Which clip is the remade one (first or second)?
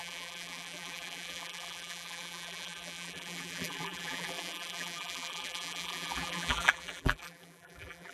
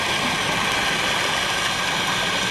first